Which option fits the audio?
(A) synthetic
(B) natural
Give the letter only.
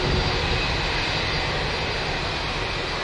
B